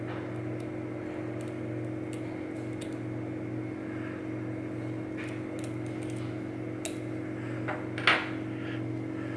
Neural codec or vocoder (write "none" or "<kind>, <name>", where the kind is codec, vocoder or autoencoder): none